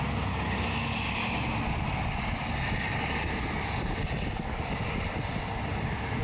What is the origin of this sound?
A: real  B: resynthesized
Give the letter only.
A